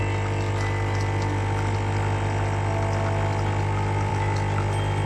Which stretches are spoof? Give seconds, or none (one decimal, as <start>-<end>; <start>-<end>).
none